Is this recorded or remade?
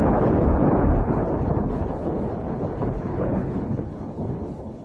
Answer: remade